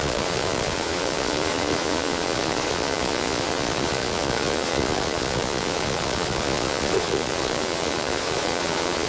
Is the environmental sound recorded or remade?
remade